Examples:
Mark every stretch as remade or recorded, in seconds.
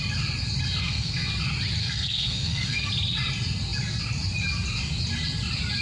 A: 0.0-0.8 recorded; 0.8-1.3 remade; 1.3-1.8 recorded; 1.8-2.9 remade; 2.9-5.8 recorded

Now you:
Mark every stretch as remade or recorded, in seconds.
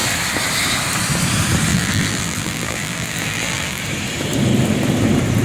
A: 0.0-1.7 recorded; 1.7-3.8 remade; 3.8-5.4 recorded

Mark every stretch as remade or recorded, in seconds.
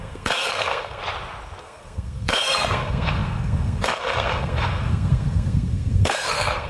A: 0.0-1.0 remade; 1.0-1.6 recorded; 1.6-6.7 remade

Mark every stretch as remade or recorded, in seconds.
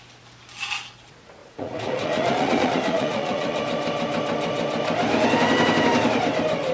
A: 0.0-1.4 recorded; 1.4-3.6 remade; 3.6-6.7 recorded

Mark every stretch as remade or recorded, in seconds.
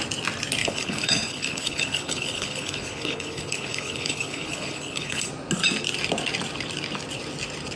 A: 0.0-0.6 recorded; 0.6-5.3 remade; 5.3-7.8 recorded